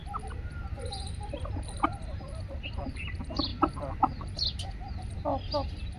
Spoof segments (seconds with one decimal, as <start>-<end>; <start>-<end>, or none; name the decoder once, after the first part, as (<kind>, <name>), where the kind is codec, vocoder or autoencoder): none